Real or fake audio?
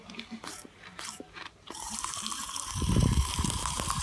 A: fake